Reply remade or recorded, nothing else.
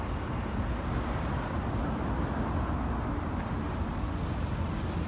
recorded